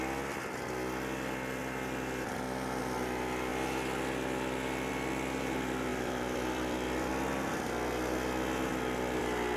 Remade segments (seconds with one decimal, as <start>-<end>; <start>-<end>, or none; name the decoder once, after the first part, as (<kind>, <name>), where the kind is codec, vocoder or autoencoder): 5.9-7.1 (vocoder, BigVGAN v2)